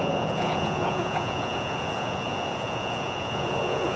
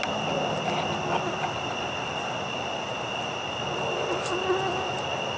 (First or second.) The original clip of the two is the second